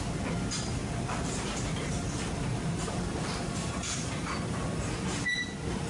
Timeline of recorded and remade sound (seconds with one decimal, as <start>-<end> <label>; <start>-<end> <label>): 0.0-0.8 recorded; 0.8-4.3 remade; 4.3-5.9 recorded